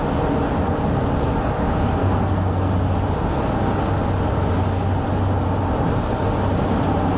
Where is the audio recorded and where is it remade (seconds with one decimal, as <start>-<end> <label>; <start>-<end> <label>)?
0.0-2.0 recorded; 2.0-2.7 remade; 2.7-7.2 recorded